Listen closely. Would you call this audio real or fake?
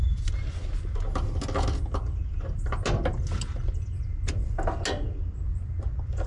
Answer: real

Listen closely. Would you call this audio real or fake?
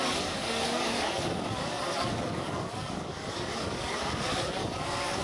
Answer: fake